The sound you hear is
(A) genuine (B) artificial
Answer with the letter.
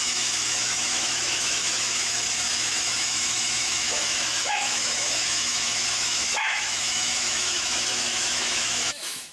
B